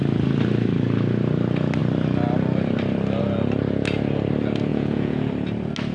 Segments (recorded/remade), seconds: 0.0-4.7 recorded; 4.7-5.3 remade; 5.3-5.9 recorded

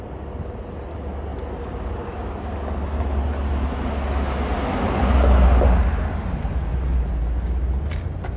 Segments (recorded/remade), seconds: 0.0-8.4 recorded

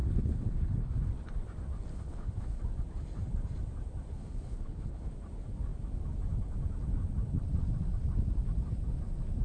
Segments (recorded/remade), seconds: 0.0-0.9 remade; 0.9-1.9 recorded; 1.9-2.6 remade; 2.6-4.1 recorded; 4.1-5.1 remade; 5.1-9.4 recorded

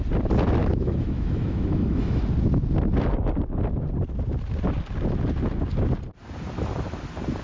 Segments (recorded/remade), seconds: 0.0-0.6 recorded; 0.6-2.2 remade; 2.2-7.4 recorded

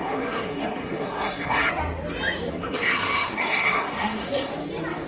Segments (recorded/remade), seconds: 0.0-1.7 remade; 1.7-2.5 recorded; 2.5-4.5 remade; 4.5-5.1 recorded

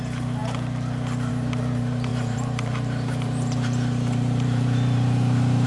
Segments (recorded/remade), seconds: 0.0-0.4 remade; 0.4-1.3 recorded; 1.3-5.7 remade